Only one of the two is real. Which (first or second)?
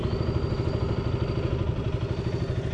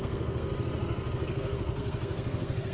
first